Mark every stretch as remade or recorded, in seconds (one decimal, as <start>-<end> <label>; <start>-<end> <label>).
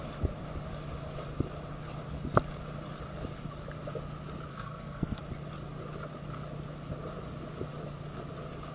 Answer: 0.0-4.5 recorded; 4.5-5.2 remade; 5.2-8.7 recorded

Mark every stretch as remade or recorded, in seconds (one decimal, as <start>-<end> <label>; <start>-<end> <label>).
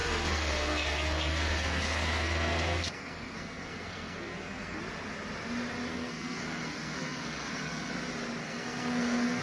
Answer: 0.0-4.8 remade; 4.8-5.9 recorded; 5.9-7.9 remade; 7.9-8.4 recorded; 8.4-9.4 remade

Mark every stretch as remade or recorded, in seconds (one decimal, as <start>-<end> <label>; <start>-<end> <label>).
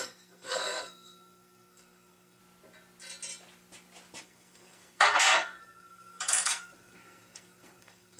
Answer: 0.0-2.4 remade; 2.4-4.2 recorded; 4.2-8.2 remade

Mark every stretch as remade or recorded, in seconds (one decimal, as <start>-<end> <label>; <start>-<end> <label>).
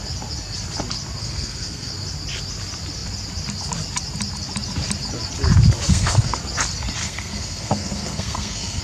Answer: 0.0-1.2 recorded; 1.2-1.9 remade; 1.9-5.9 recorded; 5.9-6.4 remade; 6.4-7.0 recorded; 7.0-8.8 remade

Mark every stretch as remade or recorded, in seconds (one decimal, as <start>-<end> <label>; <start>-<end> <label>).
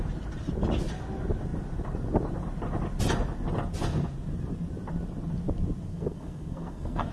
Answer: 0.0-5.9 recorded; 5.9-7.1 remade